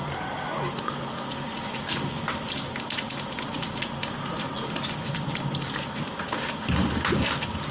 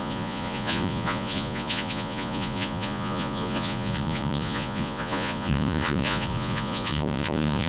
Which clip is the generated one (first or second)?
second